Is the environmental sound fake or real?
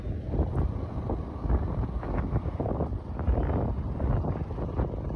real